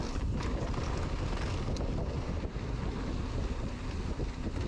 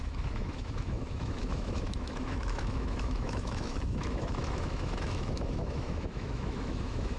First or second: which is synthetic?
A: second